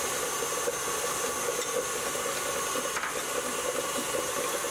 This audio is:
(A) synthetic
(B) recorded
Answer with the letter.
B